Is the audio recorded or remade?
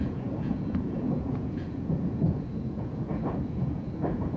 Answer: remade